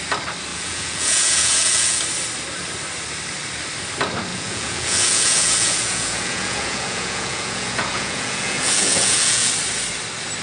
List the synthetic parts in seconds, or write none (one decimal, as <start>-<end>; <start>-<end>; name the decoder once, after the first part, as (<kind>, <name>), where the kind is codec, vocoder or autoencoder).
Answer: 0.5-2.0 (vocoder, Vocos); 4.3-9.5